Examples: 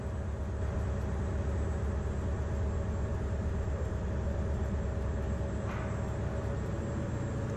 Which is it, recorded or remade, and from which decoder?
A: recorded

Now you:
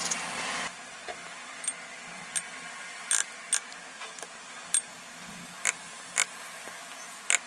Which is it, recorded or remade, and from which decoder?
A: recorded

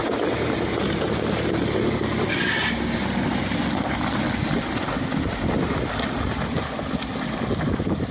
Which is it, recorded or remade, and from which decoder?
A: recorded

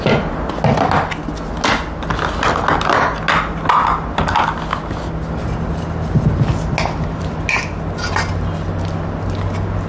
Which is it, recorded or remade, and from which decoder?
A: recorded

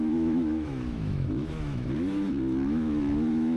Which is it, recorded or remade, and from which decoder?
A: remade, autoencoder, DAC-VAE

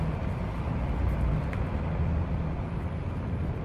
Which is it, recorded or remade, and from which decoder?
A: recorded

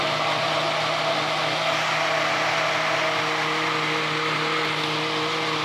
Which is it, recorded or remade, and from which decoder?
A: recorded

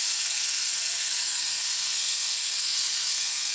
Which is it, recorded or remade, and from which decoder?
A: remade, codec, SNAC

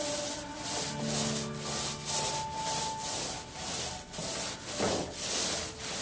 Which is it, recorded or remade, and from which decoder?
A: recorded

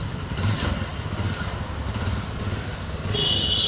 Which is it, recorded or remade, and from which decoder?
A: recorded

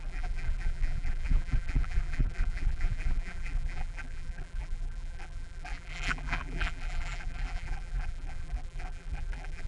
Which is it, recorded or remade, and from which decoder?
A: remade, vocoder, BigVGAN v2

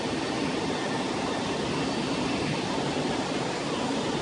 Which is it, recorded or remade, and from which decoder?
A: recorded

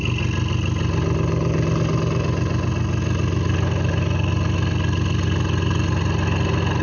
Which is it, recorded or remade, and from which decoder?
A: recorded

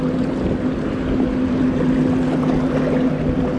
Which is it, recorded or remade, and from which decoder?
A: recorded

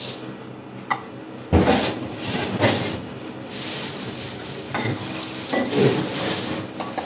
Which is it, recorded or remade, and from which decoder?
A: recorded